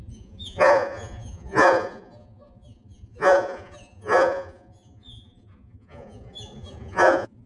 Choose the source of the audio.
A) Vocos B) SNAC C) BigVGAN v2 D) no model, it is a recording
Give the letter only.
A